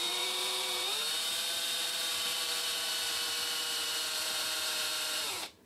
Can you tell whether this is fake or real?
fake